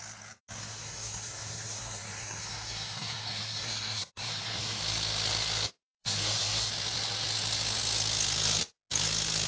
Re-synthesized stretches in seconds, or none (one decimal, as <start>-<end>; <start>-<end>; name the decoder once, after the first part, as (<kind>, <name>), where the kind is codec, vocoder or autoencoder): 0.6-4.8 (codec, SNAC); 6.0-6.7